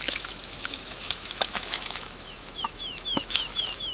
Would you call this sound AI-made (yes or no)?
yes